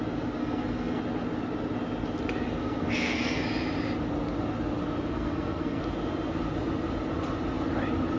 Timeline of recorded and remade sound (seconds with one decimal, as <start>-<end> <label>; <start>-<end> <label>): 0.0-0.4 recorded; 0.4-1.0 remade; 1.0-2.6 recorded; 2.6-3.4 remade; 3.4-5.1 recorded; 5.1-5.8 remade; 5.8-8.2 recorded